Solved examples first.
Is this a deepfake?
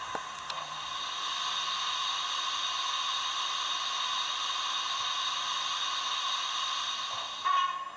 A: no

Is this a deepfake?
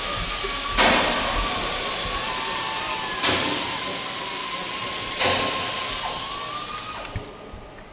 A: no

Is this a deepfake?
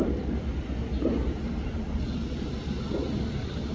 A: no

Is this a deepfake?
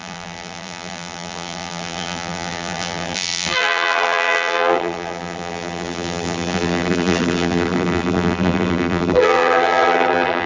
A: yes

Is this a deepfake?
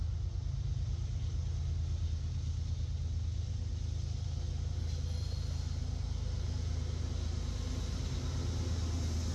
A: no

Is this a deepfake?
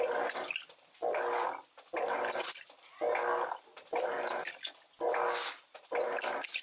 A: no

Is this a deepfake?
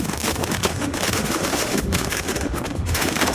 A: yes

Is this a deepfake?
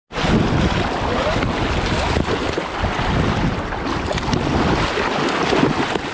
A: no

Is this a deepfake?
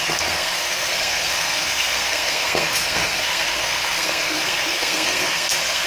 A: yes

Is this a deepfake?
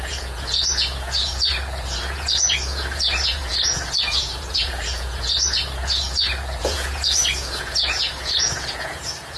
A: yes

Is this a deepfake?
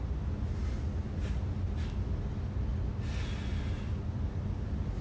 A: no